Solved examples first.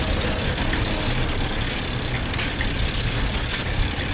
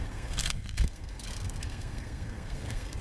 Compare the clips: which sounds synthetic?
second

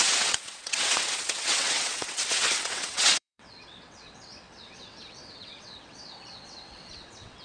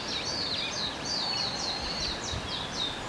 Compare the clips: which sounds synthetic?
first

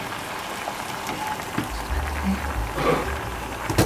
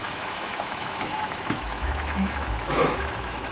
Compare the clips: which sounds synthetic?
second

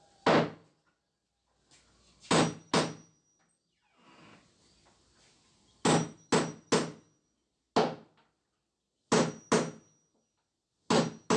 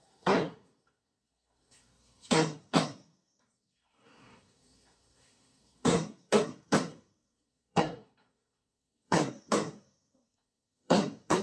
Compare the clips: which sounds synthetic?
second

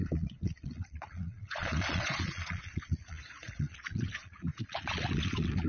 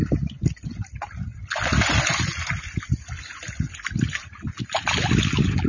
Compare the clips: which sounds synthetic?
first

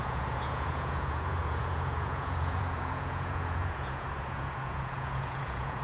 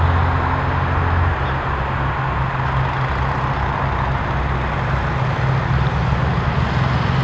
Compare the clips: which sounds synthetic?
first